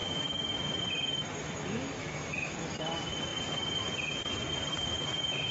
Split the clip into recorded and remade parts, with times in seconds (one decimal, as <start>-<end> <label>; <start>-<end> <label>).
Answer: 0.0-0.8 remade; 0.8-2.0 recorded; 2.0-2.5 remade; 2.5-5.5 recorded